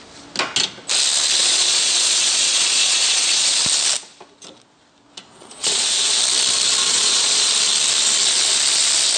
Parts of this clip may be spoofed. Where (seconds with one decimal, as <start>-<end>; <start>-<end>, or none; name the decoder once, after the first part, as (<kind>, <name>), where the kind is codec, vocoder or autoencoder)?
1.4-3.6 (vocoder, Vocos); 5.3-6.2; 6.9-7.5

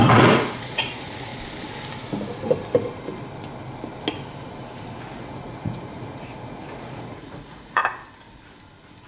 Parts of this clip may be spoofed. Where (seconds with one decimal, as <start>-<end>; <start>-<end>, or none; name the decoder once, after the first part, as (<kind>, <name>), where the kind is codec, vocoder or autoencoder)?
0.0-1.3 (vocoder, Vocos); 5.2-7.8

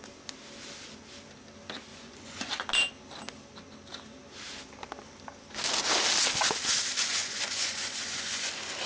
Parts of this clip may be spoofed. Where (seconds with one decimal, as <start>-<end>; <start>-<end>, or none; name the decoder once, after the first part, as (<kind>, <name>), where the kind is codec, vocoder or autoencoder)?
1.9-2.5 (vocoder, Vocos); 7.1-8.5